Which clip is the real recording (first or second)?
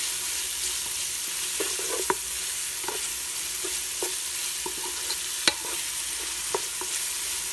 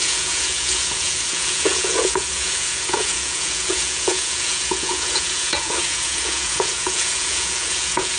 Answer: first